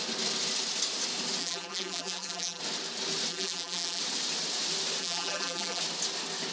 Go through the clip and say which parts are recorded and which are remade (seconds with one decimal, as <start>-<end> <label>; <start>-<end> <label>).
0.0-1.4 recorded; 1.4-2.6 remade; 2.6-3.3 recorded; 3.3-4.0 remade; 4.0-5.0 recorded; 5.0-5.8 remade; 5.8-6.5 recorded